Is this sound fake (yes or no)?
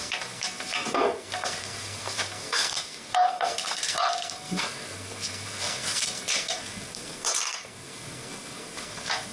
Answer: yes